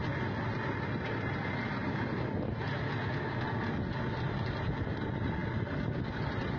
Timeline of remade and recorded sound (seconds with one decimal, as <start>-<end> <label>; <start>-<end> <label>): 0.0-6.6 recorded